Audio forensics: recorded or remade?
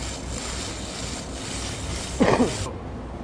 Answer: recorded